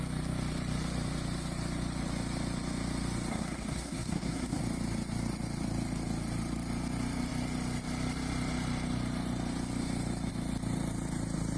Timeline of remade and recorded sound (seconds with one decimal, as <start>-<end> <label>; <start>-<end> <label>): 0.0-3.3 recorded; 3.3-4.6 remade; 4.6-11.6 recorded